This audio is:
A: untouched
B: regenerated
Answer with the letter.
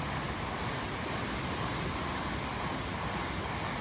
A